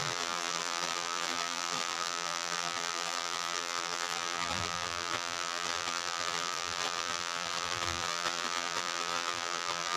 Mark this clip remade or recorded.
remade